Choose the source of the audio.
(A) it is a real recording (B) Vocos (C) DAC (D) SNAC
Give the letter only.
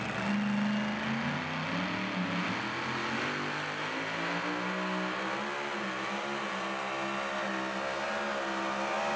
A